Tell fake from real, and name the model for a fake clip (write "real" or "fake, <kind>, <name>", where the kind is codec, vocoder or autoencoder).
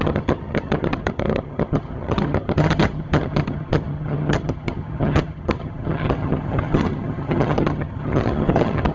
fake, vocoder, HiFi-GAN